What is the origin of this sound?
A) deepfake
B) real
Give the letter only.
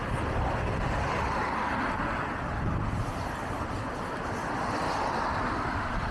B